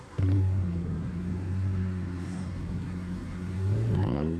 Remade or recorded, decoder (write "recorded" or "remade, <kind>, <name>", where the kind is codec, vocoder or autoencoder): remade, codec, SNAC